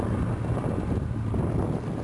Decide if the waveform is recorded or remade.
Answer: recorded